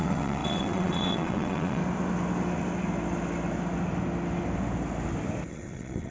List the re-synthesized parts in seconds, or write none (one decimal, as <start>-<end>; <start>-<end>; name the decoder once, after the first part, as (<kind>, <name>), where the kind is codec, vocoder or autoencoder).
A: 0.0-1.8 (vocoder, WaveNeXt); 5.5-6.1